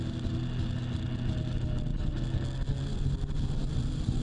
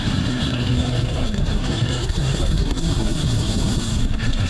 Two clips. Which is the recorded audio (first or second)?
first